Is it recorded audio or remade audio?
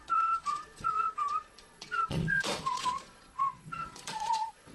remade